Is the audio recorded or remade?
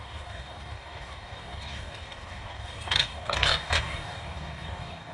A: remade